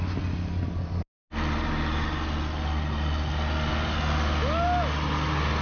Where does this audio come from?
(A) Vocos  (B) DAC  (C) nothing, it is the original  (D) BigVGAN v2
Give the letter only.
C